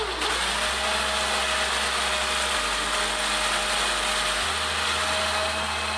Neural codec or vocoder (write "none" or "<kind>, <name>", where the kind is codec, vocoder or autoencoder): none